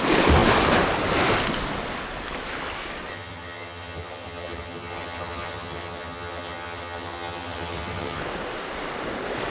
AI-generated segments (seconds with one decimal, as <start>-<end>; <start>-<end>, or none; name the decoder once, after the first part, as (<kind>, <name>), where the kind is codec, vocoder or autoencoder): 3.1-8.2 (vocoder, HiFi-GAN)

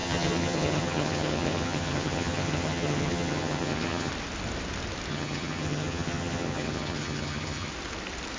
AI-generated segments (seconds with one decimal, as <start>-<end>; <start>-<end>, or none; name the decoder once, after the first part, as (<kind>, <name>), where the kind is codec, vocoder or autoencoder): 0.0-4.1 (vocoder, HiFi-GAN); 5.1-7.7

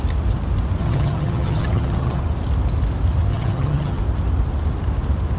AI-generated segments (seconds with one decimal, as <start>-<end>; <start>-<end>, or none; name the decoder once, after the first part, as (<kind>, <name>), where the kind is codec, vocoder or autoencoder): 0.8-2.2 (vocoder, HiFi-GAN); 3.3-4.0

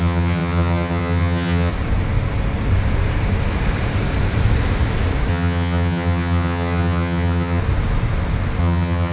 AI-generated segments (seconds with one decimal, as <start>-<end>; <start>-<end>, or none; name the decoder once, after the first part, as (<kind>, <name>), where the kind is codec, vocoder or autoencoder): 0.0-1.7 (vocoder, HiFi-GAN); 5.3-7.6; 8.6-9.1

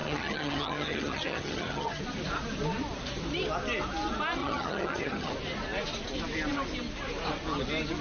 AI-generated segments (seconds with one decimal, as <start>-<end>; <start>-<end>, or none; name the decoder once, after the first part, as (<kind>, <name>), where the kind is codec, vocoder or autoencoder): 0.0-2.0 (vocoder, HiFi-GAN); 4.4-5.3

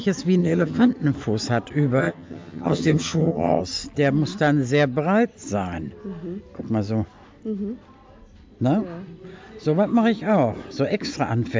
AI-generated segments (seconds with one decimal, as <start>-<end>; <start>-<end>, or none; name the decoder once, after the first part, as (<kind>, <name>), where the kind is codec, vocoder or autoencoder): 0.4-0.9 (vocoder, HiFi-GAN); 2.0-3.6